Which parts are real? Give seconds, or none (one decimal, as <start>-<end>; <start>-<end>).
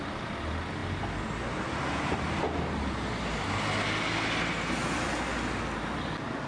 0.0-6.5